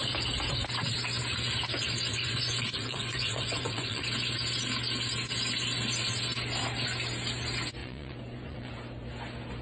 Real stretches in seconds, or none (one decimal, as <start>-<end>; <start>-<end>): 0.0-2.1; 4.0-7.8; 8.7-9.6